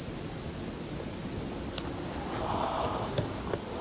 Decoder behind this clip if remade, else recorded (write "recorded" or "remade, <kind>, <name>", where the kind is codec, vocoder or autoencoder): recorded